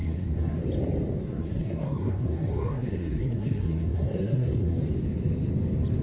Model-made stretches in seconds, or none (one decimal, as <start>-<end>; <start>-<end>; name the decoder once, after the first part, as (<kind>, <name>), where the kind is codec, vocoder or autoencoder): 0.0-0.6 (codec, SNAC); 1.2-4.8